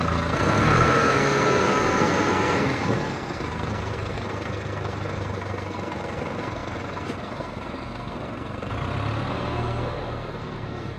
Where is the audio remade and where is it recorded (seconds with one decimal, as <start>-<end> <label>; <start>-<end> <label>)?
0.0-8.7 remade; 8.7-9.3 recorded; 9.3-11.0 remade